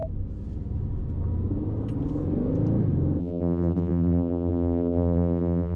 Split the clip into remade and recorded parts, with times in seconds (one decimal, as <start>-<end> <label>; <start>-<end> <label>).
0.0-3.2 recorded; 3.2-5.8 remade